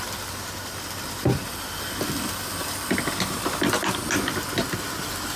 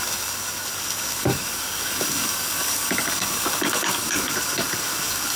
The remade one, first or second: second